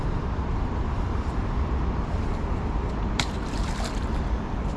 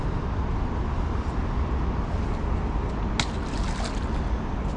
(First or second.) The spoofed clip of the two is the first